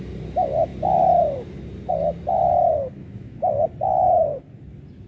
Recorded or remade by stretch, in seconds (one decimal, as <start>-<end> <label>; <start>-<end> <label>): 0.0-3.0 recorded; 3.0-3.6 remade; 3.6-5.1 recorded